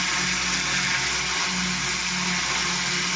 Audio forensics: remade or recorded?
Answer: recorded